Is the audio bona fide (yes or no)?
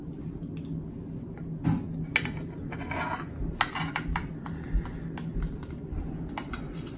yes